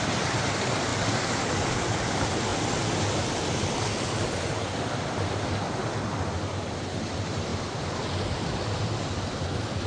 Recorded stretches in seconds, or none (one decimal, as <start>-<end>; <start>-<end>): 0.0-9.9